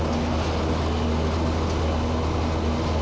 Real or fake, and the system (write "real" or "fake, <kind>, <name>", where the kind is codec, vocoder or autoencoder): real